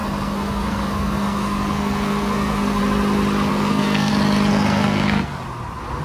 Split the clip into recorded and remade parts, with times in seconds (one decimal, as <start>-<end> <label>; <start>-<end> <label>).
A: 0.0-2.8 remade; 2.8-3.5 recorded; 3.5-4.1 remade; 4.1-4.5 recorded; 4.5-5.4 remade; 5.4-6.0 recorded